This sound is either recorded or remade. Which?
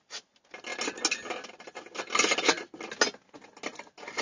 recorded